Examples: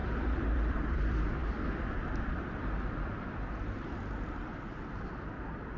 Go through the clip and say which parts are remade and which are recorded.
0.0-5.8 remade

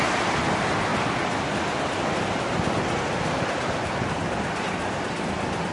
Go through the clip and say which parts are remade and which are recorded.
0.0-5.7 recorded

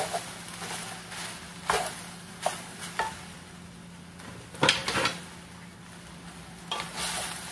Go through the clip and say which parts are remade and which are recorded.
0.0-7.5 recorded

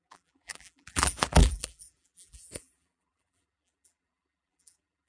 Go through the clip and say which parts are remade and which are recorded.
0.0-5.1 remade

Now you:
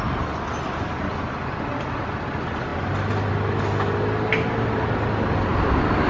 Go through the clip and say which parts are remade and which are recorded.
0.0-6.1 recorded